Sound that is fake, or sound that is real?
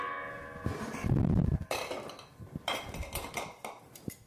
real